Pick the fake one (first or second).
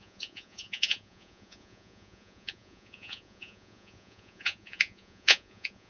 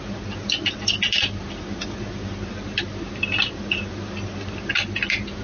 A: first